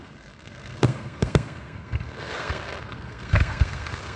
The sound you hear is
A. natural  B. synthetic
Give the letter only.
B